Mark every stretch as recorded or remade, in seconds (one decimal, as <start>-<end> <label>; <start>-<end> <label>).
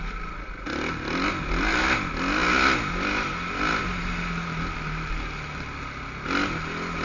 0.0-7.0 recorded